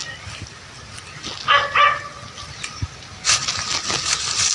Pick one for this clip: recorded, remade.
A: recorded